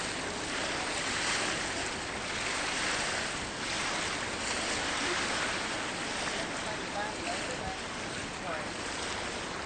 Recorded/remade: recorded